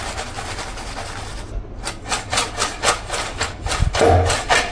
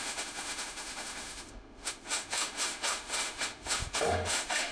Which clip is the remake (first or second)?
second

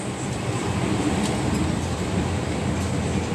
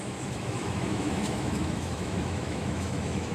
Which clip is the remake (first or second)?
second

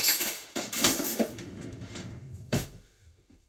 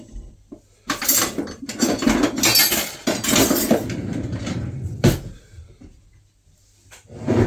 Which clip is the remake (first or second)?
first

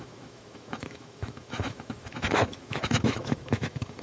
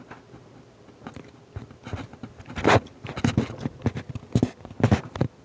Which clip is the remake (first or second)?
first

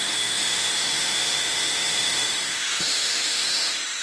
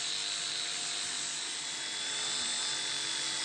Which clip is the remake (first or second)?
first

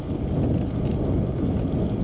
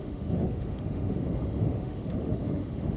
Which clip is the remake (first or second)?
second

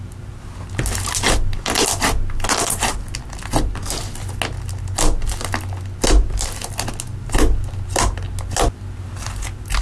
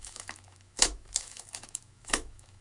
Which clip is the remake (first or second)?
second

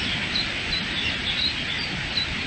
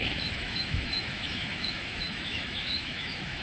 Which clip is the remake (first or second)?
second